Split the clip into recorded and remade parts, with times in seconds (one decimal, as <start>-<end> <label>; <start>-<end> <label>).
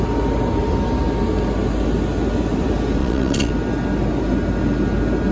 0.0-3.0 recorded; 3.0-3.5 remade; 3.5-5.3 recorded